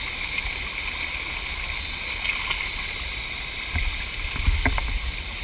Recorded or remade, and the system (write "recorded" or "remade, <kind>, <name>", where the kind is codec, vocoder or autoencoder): recorded